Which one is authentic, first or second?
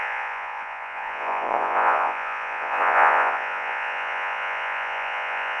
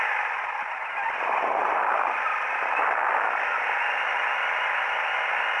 second